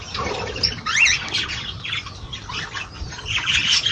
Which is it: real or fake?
real